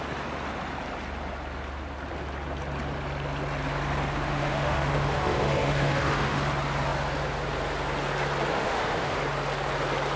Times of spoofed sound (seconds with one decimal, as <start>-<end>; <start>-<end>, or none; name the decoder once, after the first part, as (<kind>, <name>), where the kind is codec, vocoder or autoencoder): 4.1-6.4 (autoencoder, DAC-VAE); 8.5-9.2